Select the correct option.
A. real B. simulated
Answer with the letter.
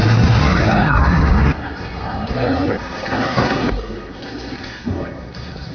B